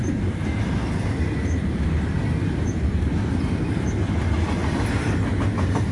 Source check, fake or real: real